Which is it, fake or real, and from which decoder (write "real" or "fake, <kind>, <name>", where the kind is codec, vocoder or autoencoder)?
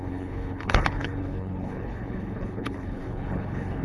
fake, codec, HILCodec